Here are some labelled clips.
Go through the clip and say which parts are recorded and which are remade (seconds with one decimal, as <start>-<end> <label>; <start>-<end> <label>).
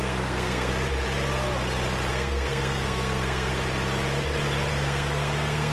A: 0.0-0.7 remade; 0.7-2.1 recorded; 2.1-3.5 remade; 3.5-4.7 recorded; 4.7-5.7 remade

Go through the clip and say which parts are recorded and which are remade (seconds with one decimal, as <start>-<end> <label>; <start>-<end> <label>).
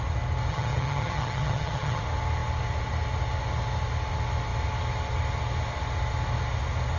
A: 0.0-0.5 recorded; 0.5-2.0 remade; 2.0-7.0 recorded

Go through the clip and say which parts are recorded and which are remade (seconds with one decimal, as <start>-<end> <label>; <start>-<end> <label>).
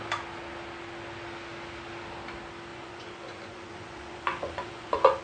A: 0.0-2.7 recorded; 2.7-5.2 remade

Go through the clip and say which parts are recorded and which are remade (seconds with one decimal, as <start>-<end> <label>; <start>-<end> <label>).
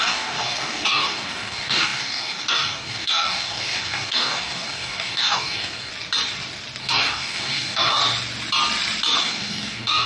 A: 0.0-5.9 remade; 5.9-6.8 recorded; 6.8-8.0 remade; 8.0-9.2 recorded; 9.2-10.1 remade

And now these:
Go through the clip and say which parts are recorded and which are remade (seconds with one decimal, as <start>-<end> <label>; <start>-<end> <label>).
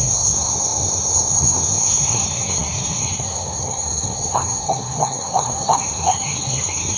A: 0.0-7.0 remade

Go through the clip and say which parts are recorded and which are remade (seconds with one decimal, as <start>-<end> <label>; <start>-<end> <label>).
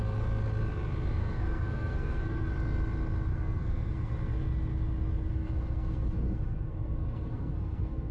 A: 0.0-1.2 recorded; 1.2-2.5 remade; 2.5-3.3 recorded; 3.3-4.1 remade; 4.1-5.3 recorded; 5.3-8.1 remade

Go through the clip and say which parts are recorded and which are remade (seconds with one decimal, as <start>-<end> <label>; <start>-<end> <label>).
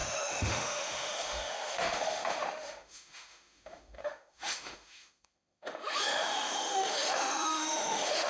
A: 0.0-8.3 remade